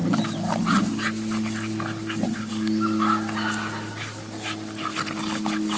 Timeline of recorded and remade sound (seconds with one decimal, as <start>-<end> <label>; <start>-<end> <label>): 0.0-5.8 recorded